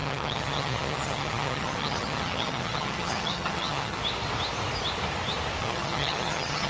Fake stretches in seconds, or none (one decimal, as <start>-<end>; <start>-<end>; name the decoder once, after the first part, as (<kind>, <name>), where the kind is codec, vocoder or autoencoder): 0.0-4.0 (vocoder, HiFi-GAN); 5.6-6.7